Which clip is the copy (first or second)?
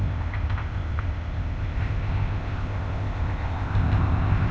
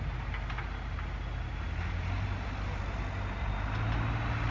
first